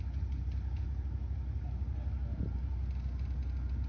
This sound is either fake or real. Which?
real